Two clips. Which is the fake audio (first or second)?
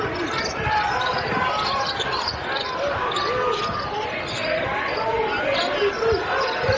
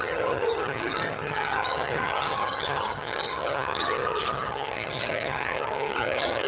second